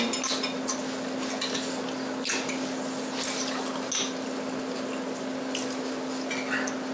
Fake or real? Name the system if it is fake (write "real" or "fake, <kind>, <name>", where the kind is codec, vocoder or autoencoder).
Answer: real